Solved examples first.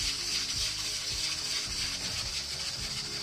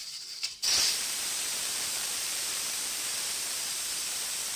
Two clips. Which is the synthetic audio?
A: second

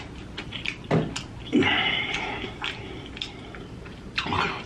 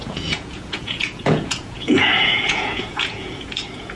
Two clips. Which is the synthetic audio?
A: second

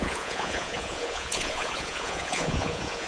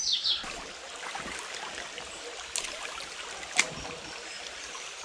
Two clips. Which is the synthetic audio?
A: first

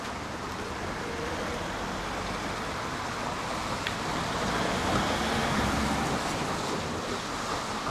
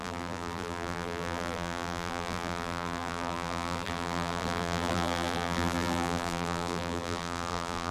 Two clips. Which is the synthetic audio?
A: second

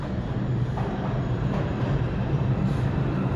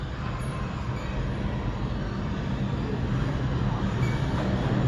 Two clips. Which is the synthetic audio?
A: first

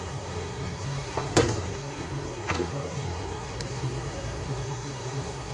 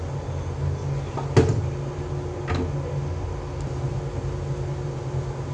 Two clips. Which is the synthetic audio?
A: first